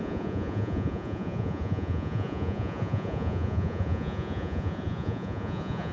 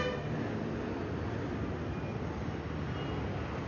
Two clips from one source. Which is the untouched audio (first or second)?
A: second